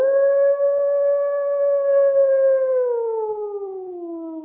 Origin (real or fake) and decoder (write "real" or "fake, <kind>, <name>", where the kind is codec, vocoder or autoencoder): real